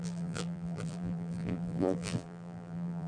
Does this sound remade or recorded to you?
remade